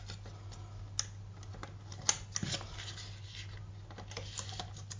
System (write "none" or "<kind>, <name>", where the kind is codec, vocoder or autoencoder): none